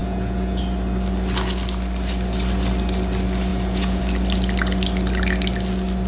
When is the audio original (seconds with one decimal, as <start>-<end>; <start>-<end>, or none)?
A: 0.6-3.5; 4.0-6.1